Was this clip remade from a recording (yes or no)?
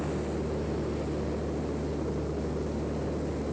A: no